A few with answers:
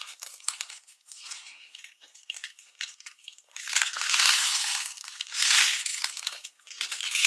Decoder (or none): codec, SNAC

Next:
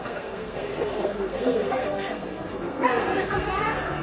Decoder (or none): codec, SNAC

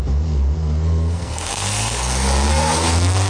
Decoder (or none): codec, SNAC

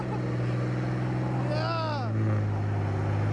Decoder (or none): none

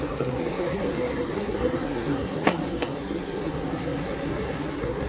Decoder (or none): codec, SNAC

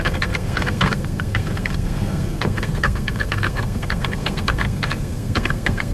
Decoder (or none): codec, SNAC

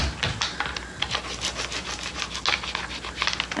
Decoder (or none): none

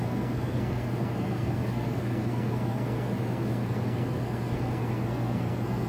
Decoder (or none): codec, SNAC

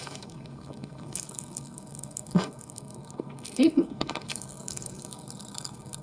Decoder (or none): codec, SNAC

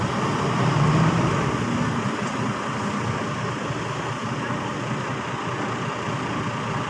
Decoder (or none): none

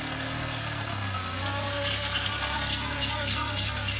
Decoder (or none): codec, SNAC